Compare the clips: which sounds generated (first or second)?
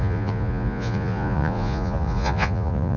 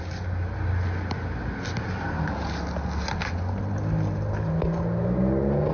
first